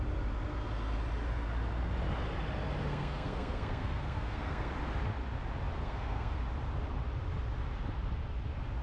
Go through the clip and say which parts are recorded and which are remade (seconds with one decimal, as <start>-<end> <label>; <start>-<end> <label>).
0.0-2.9 recorded; 2.9-4.7 remade; 4.7-5.8 recorded; 5.8-6.4 remade; 6.4-8.8 recorded